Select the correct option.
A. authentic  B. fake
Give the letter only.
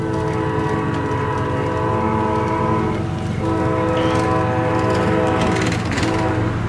A